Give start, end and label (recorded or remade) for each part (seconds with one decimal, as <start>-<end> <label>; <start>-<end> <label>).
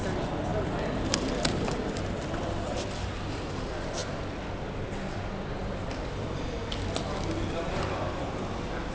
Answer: 0.0-0.5 recorded; 0.5-2.0 remade; 2.0-5.6 recorded; 5.6-8.2 remade; 8.2-8.9 recorded